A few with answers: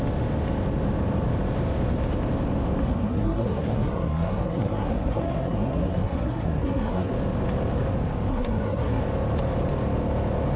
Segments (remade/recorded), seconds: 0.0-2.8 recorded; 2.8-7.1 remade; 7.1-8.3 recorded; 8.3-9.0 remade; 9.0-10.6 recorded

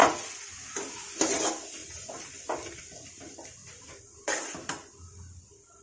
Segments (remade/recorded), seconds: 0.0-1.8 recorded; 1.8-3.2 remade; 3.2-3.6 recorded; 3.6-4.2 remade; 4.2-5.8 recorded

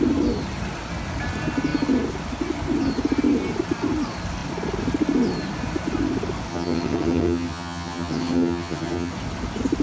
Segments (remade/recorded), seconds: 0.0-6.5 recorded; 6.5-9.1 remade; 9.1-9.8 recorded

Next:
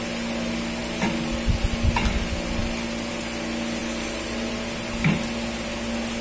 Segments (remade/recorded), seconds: 0.0-6.2 recorded